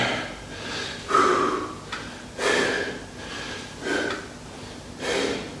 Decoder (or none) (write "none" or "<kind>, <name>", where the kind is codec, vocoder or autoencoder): none